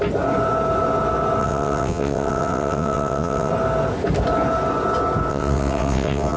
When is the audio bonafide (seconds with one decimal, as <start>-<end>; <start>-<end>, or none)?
0.0-1.4; 3.5-5.3